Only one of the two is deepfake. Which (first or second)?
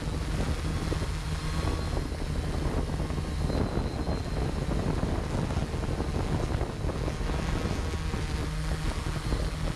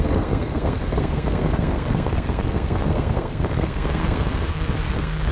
second